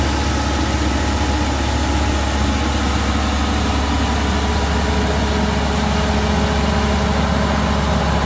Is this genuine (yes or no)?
yes